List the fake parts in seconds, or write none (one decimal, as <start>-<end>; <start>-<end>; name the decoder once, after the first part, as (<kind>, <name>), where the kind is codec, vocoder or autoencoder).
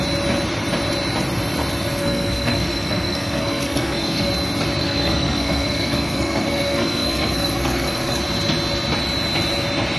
2.0-4.3 (codec, SNAC); 4.8-8.2